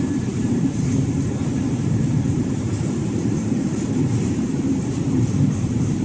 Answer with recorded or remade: remade